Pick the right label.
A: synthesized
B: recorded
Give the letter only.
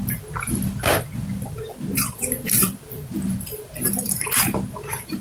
A